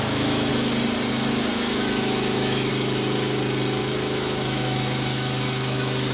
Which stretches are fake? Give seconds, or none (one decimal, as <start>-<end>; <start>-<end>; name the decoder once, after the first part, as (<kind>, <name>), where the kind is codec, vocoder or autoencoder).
0.0-0.5 (autoencoder, DAC-VAE); 1.1-2.7; 3.8-6.1